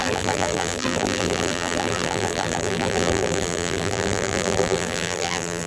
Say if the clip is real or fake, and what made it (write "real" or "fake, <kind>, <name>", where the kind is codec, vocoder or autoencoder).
fake, vocoder, BigVGAN v2